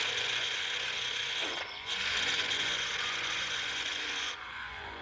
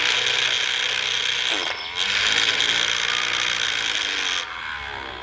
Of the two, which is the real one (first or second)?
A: second